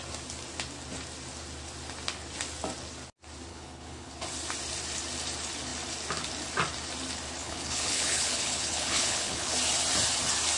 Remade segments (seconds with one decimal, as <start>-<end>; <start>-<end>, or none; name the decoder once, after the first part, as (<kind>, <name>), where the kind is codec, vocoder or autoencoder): 3.5-4.1 (codec, HILCodec); 7.4-9.5